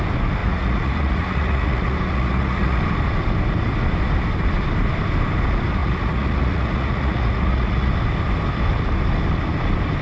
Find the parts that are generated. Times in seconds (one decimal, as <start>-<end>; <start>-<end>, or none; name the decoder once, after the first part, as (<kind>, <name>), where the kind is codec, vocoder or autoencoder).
0.4-2.8 (vocoder, Vocos); 5.8-7.9